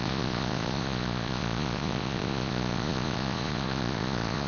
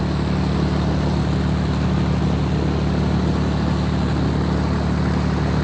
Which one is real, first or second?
second